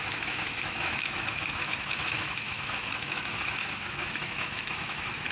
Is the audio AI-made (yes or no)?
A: yes